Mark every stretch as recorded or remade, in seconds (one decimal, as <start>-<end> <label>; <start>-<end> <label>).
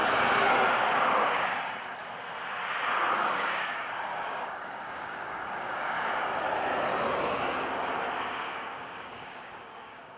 0.0-3.3 recorded; 3.3-6.3 remade; 6.3-8.2 recorded; 8.2-10.2 remade